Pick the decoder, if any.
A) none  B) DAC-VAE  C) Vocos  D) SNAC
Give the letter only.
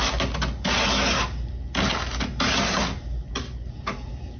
A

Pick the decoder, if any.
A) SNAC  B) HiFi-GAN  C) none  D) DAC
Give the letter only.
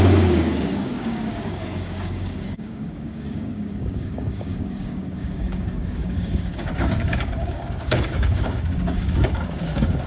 D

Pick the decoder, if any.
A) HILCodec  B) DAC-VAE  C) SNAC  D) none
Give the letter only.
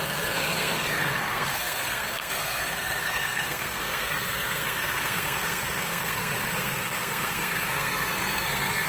C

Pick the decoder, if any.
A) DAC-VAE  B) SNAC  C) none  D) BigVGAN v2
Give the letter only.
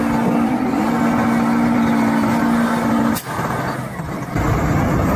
C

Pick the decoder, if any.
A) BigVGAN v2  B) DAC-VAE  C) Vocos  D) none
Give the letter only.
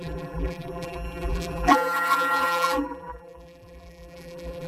A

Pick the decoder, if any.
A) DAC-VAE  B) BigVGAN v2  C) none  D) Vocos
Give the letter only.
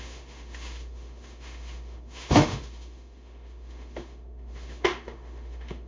A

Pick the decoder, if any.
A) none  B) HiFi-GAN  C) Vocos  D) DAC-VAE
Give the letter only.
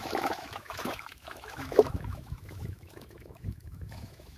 D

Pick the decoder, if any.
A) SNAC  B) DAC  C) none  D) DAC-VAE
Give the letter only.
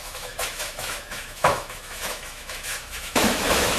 D